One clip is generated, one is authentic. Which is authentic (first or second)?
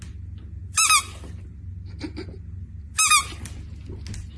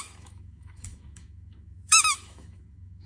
first